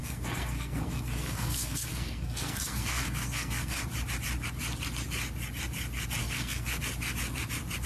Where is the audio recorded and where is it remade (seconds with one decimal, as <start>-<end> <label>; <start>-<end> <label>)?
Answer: 0.0-3.8 remade; 3.8-6.2 recorded; 6.2-6.8 remade; 6.8-7.9 recorded